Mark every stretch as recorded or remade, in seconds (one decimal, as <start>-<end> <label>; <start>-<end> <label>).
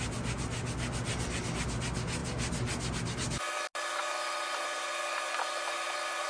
0.0-6.3 recorded